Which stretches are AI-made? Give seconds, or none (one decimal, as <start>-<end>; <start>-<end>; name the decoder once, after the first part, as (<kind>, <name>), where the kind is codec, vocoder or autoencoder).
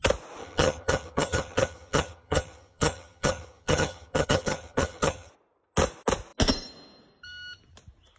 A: 0.4-5.3 (vocoder, HiFi-GAN)